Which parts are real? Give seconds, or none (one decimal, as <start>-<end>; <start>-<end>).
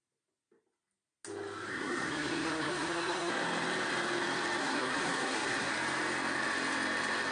0.0-1.7; 3.3-4.6; 5.7-7.3